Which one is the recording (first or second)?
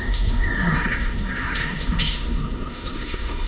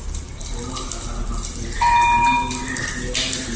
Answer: second